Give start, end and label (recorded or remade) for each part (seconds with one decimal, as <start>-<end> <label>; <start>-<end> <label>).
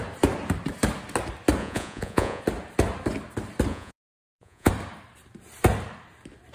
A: 0.0-1.6 recorded; 1.6-2.4 remade; 2.4-3.7 recorded; 3.7-4.7 remade; 4.7-6.5 recorded